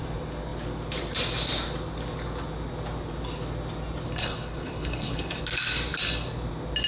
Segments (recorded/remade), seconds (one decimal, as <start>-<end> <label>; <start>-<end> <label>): 0.0-4.2 recorded; 4.2-5.4 remade; 5.4-6.9 recorded